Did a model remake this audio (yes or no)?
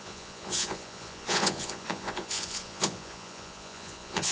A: yes